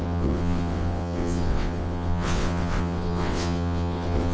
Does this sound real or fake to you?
fake